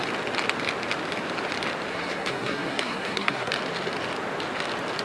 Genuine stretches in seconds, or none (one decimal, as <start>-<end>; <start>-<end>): 0.0-1.9; 3.5-5.0